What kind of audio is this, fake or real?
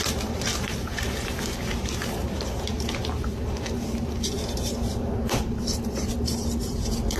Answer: fake